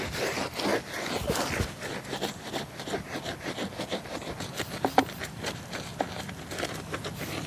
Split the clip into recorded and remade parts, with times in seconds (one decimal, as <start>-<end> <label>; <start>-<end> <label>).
0.0-0.7 remade; 0.7-1.9 recorded; 1.9-5.9 remade; 5.9-6.8 recorded; 6.8-7.5 remade